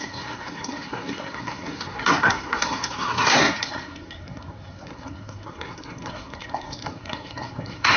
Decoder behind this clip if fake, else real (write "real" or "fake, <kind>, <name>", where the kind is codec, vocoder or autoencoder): fake, codec, SNAC